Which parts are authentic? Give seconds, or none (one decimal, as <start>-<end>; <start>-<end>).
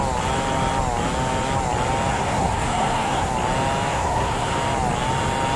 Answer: 0.0-2.1; 3.3-3.9; 4.5-5.6